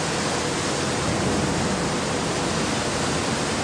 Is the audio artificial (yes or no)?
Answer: no